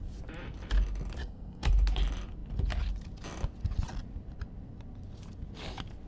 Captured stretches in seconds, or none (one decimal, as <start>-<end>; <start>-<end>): 0.0-1.2; 1.7-6.1